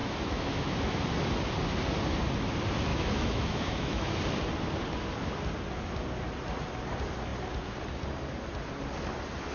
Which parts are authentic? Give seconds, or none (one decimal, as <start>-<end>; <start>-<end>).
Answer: 1.0-2.9; 4.2-9.5